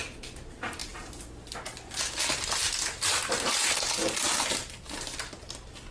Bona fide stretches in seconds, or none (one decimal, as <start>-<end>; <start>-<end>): 0.0-5.9